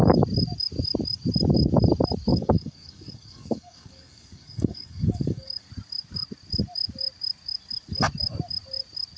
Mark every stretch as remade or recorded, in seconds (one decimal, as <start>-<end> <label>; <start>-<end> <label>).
0.0-2.3 recorded; 2.3-5.7 remade; 5.7-9.2 recorded